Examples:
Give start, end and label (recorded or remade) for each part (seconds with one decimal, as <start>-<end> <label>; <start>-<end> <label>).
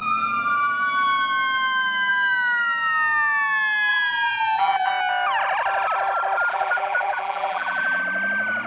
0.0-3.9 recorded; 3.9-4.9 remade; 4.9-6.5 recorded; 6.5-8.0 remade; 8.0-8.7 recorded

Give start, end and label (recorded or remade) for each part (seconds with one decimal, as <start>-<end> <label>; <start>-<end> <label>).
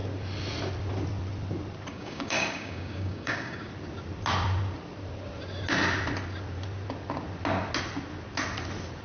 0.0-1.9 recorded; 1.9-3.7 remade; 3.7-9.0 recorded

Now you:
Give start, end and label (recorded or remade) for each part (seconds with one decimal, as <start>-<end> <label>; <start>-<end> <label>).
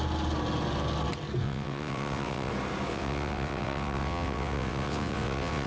0.0-1.4 recorded; 1.4-2.5 remade; 2.5-2.9 recorded; 2.9-5.7 remade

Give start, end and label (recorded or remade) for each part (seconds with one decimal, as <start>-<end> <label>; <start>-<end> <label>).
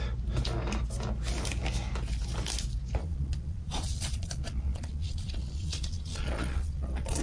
0.0-3.0 recorded; 3.0-7.2 remade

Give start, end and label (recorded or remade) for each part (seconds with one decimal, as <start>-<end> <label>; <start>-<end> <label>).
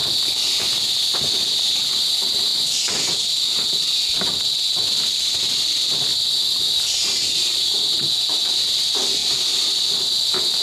0.0-10.6 recorded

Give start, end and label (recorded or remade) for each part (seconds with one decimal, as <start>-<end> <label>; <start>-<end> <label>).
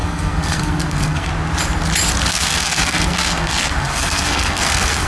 0.0-1.3 remade; 1.3-2.3 recorded; 2.3-5.1 remade